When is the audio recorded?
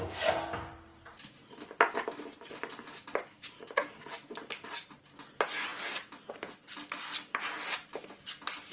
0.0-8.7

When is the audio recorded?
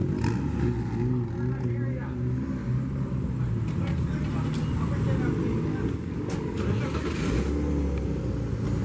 0.0-5.7; 6.6-8.8